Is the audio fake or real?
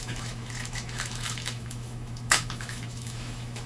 fake